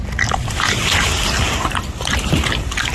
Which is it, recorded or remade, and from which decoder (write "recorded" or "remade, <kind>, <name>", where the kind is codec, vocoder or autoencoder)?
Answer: recorded